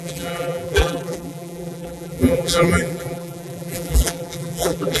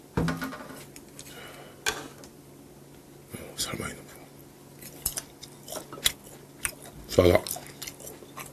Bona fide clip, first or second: second